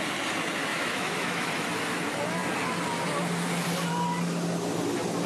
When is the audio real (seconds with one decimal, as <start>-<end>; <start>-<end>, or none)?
0.0-0.7; 1.5-5.3